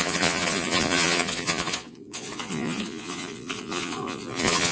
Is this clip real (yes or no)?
no